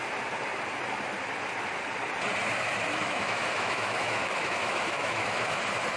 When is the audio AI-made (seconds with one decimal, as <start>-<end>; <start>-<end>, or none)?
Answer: 2.9-5.6

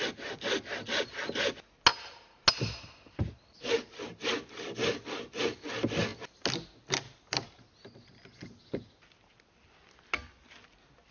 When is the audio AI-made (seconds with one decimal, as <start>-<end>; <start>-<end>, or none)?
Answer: none

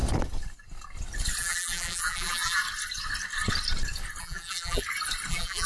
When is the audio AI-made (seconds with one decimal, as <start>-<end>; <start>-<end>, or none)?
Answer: 1.4-2.6; 4.2-4.8; 5.3-5.7

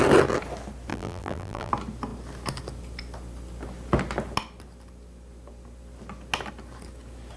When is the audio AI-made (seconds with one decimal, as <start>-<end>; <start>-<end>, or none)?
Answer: 0.9-1.7

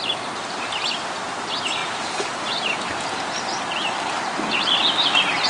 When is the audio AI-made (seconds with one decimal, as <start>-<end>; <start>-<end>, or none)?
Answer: none

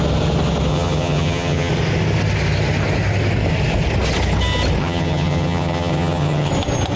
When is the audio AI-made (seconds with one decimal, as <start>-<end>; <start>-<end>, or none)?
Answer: 0.7-1.7; 4.8-6.5

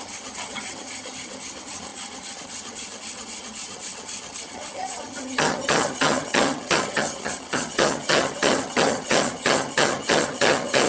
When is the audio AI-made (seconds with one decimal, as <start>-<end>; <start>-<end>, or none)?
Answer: 0.0-10.9

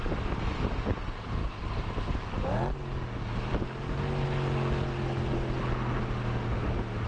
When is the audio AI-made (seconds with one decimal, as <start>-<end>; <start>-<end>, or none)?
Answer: none